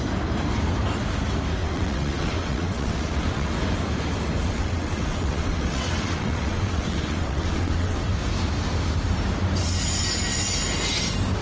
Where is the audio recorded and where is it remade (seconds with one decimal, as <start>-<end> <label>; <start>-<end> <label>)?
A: 0.0-1.6 recorded; 1.6-3.5 remade; 3.5-4.4 recorded; 4.4-8.1 remade; 8.1-11.4 recorded